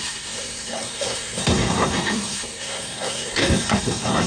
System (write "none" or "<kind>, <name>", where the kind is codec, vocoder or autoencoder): codec, SNAC